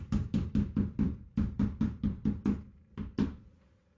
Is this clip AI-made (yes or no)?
yes